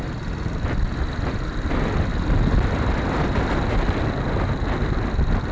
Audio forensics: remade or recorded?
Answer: recorded